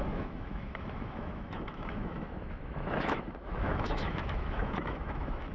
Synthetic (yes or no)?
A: yes